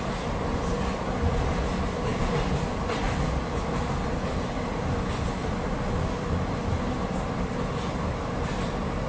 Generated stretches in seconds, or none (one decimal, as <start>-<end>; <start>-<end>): none